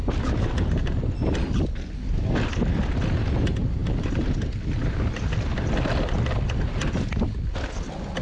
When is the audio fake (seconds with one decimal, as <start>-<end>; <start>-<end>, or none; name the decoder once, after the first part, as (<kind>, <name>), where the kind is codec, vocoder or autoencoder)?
none